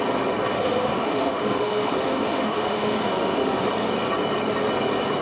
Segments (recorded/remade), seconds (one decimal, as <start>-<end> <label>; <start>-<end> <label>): 0.0-0.5 recorded; 0.5-3.6 remade; 3.6-5.2 recorded